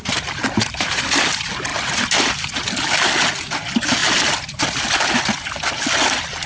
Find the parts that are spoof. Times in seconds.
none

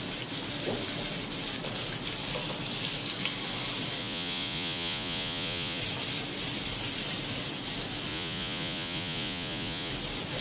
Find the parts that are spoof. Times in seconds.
4.0-5.8 (vocoder, Vocos); 8.1-9.9

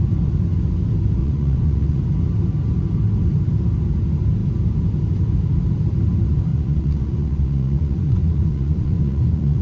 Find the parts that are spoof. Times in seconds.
1.2-2.0 (vocoder, Vocos); 6.5-9.6

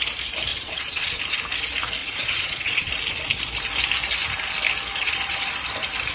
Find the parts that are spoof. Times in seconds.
0.5-1.2 (vocoder, Vocos); 2.0-2.9; 4.9-5.5

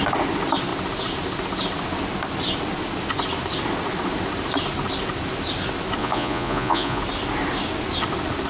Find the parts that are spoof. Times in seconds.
6.0-7.0 (vocoder, Vocos)